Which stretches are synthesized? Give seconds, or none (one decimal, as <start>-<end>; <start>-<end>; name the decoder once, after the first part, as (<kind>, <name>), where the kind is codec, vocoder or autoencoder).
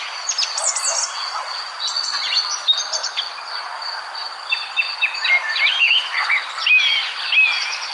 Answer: none